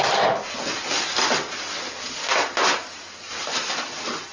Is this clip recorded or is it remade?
recorded